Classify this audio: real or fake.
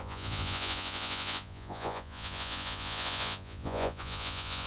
fake